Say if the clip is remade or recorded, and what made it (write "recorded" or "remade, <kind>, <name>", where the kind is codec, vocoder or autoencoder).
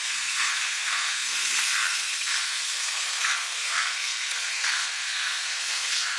remade, codec, SNAC